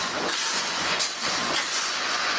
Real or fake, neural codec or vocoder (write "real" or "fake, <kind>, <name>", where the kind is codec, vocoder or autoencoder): fake, vocoder, Vocos